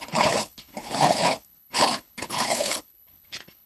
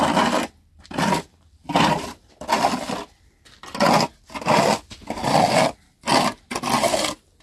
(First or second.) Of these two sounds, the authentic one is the second